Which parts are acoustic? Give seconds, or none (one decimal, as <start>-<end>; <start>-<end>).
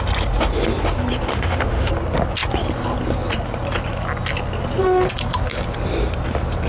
0.0-1.3; 1.9-6.7